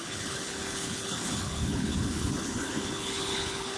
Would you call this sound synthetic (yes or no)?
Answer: yes